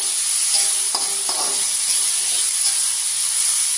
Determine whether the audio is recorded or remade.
recorded